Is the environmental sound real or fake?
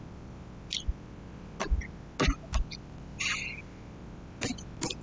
real